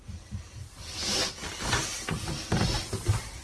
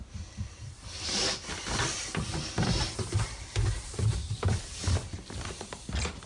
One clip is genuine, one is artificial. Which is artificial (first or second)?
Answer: second